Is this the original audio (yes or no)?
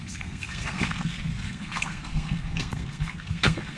no